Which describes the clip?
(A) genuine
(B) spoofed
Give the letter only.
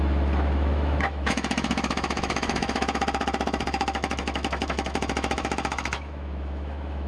B